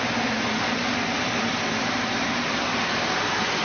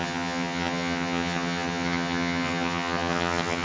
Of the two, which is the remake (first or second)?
second